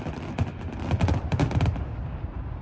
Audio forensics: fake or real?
real